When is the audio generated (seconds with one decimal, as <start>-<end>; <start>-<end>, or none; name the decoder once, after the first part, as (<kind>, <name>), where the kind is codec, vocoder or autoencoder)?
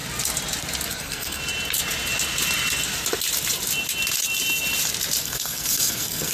0.9-1.4 (codec, SNAC); 5.2-6.3